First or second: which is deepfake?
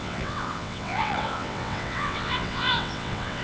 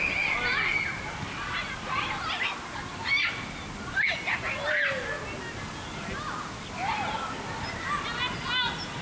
first